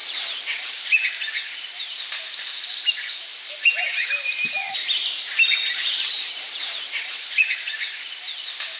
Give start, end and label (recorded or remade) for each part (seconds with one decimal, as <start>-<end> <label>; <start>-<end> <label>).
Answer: 0.0-1.4 recorded; 1.4-5.0 remade; 5.0-5.7 recorded; 5.7-8.8 remade